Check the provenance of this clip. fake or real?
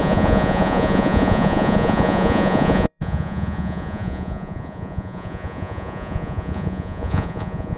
fake